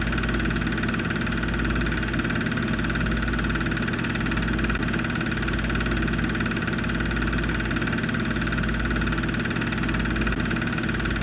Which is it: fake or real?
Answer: real